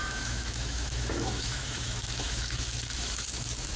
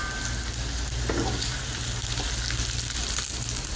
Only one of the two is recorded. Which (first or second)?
second